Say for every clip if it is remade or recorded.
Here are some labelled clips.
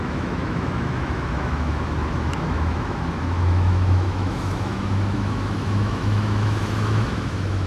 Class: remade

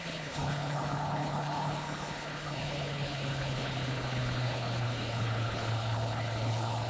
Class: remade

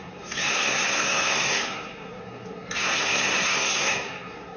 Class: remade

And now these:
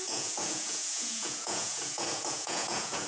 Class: remade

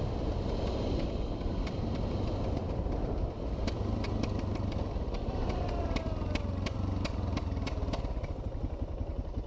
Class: recorded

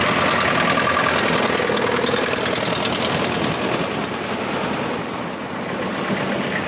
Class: recorded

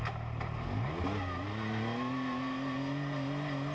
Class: recorded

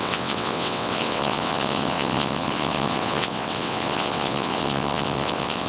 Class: remade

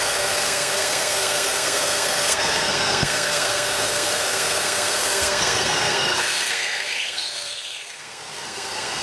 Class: remade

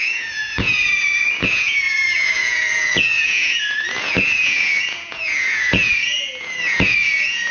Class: remade